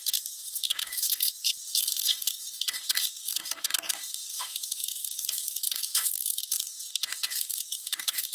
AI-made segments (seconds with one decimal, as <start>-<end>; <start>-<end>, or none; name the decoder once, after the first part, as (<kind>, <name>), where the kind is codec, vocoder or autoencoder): 0.0-8.3 (codec, DAC)